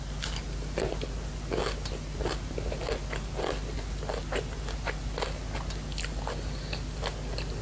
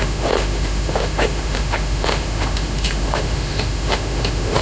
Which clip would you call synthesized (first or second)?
second